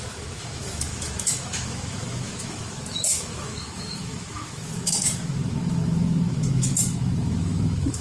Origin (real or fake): fake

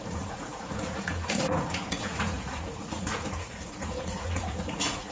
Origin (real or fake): fake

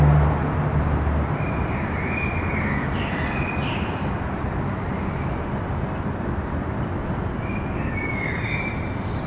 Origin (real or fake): real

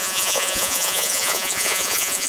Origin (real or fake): fake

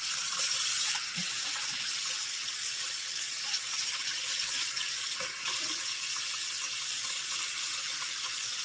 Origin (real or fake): fake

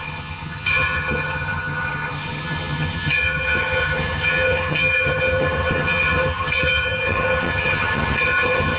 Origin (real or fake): fake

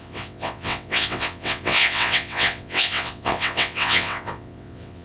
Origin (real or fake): fake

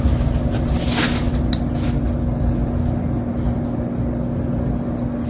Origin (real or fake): real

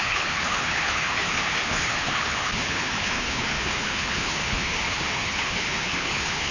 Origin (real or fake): fake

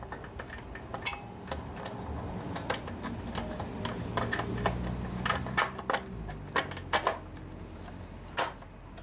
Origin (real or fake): real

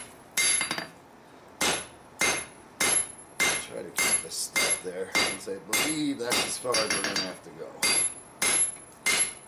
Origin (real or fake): real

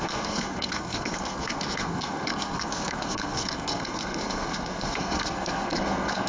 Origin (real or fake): fake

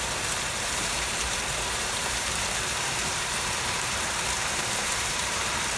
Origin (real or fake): fake